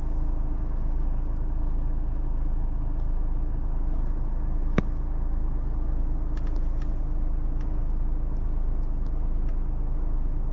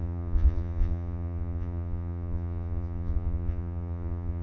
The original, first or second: first